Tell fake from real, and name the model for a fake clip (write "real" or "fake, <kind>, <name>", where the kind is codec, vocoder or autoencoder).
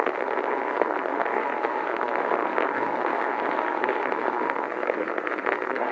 fake, codec, SNAC